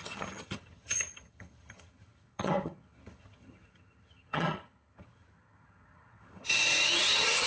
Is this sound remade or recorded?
remade